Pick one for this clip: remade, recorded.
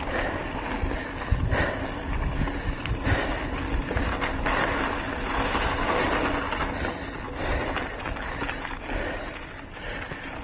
recorded